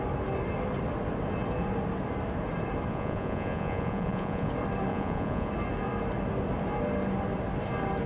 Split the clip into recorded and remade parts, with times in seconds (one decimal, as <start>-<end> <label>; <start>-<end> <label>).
0.0-2.9 recorded; 2.9-4.5 remade; 4.5-4.9 recorded; 4.9-5.5 remade; 5.5-8.1 recorded